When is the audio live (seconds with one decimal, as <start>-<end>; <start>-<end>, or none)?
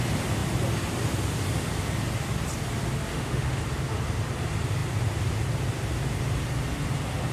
0.0-3.1; 3.6-7.3